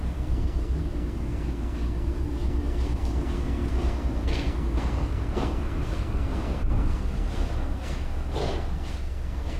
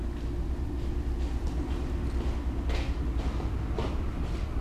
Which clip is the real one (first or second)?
second